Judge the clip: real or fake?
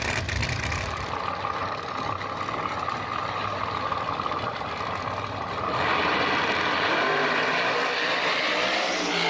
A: real